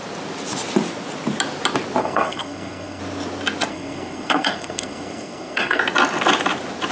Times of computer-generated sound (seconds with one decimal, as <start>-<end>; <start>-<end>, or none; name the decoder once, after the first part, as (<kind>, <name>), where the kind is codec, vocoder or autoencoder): 2.0-3.0 (codec, SNAC); 3.7-5.8